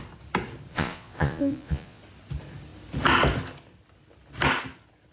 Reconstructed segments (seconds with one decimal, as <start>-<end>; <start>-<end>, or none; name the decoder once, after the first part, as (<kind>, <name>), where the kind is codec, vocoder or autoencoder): 0.7-2.0 (vocoder, Vocos)